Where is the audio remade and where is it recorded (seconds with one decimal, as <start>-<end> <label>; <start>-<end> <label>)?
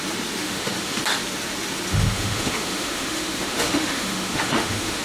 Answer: 0.0-0.4 recorded; 0.4-1.0 remade; 1.0-1.9 recorded; 1.9-5.0 remade